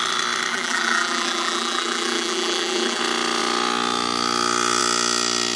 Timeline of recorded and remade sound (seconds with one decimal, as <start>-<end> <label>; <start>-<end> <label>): 0.0-0.5 recorded; 0.5-3.0 remade; 3.0-5.6 recorded